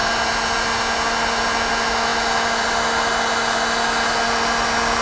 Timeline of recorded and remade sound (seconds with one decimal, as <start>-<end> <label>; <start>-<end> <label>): 0.0-5.0 recorded

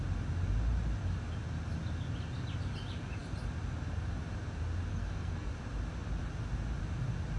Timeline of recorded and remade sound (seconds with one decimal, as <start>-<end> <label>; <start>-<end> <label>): 0.0-4.9 recorded; 4.9-5.5 remade; 5.5-7.4 recorded

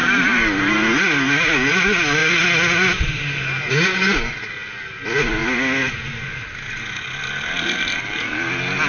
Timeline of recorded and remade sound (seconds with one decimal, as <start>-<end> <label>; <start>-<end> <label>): 0.0-8.9 recorded

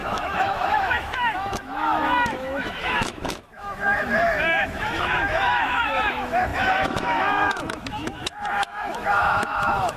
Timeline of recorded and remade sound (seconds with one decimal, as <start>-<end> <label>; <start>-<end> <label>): 0.0-10.0 remade

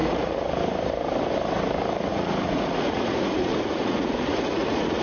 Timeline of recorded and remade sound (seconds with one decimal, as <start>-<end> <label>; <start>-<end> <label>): 0.0-0.5 remade; 0.5-2.1 recorded; 2.1-5.0 remade

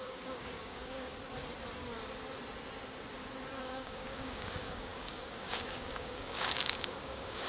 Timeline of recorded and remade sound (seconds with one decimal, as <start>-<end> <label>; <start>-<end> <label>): 0.0-1.1 remade; 1.1-3.6 recorded; 3.6-7.5 remade